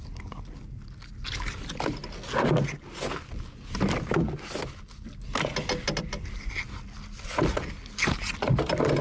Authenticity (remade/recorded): recorded